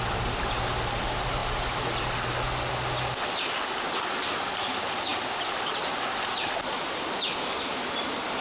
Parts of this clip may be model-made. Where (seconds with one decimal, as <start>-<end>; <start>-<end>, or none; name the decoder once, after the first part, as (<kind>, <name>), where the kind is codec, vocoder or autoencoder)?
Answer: none